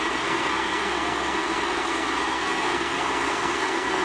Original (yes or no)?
no